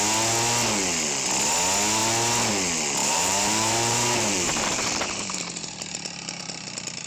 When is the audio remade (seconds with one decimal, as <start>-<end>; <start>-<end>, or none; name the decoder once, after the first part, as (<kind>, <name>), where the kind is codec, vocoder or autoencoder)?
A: 3.0-6.4 (vocoder, BigVGAN v2)